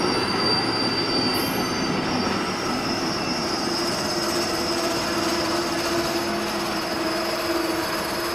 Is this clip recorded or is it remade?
recorded